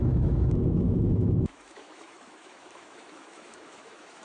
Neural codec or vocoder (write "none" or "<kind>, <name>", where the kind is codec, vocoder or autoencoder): autoencoder, DAC-VAE